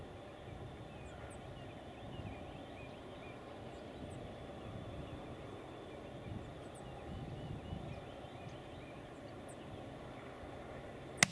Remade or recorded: recorded